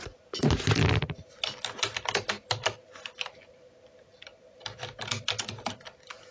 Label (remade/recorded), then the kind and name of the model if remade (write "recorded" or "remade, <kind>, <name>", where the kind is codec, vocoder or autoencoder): recorded